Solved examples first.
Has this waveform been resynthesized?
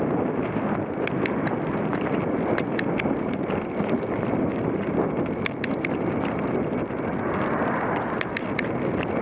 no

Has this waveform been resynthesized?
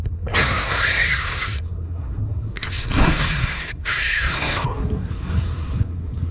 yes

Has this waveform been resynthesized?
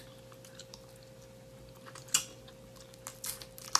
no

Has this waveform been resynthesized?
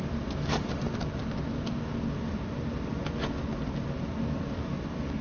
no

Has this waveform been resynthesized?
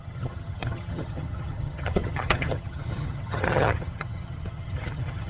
yes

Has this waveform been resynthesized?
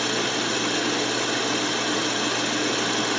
no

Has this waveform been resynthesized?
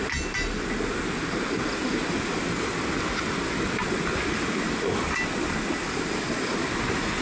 no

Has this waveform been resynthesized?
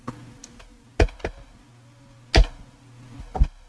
no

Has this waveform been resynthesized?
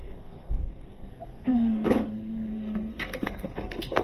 yes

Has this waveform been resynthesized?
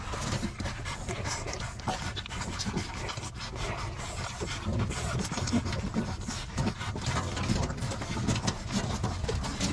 no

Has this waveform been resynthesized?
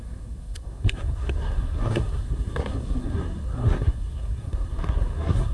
yes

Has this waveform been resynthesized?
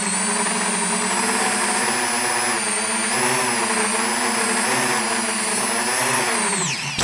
no